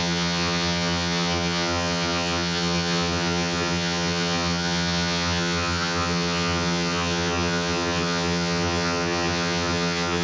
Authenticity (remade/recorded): remade